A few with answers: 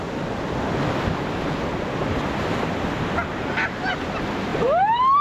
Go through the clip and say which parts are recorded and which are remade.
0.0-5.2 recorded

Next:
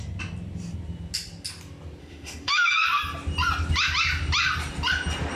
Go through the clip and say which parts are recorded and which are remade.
0.0-2.0 recorded; 2.0-2.7 remade; 2.7-5.4 recorded